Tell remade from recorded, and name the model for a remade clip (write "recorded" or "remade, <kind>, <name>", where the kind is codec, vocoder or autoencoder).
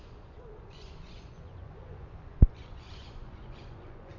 remade, vocoder, Vocos